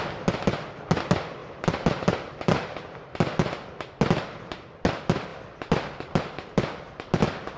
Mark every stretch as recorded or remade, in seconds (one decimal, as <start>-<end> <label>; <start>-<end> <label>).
0.0-7.6 recorded